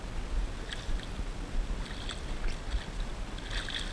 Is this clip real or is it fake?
real